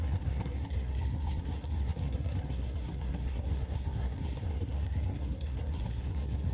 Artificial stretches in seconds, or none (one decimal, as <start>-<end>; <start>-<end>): 0.0-6.5